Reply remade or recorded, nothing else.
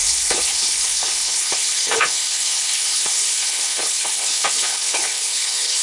remade